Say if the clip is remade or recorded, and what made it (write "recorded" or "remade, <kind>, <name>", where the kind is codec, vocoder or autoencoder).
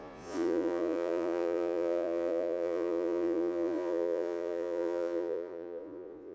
remade, vocoder, Vocos